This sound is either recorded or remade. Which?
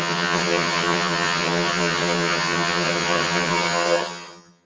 remade